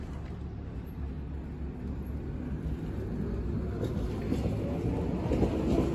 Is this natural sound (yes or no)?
yes